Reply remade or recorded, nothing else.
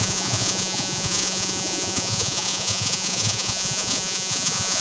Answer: remade